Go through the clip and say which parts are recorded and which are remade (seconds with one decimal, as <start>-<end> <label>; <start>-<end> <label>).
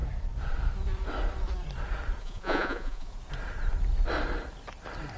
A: 0.0-2.2 recorded; 2.2-3.1 remade; 3.1-5.2 recorded